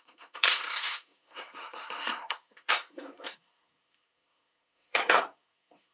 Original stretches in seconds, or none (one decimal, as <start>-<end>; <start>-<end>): none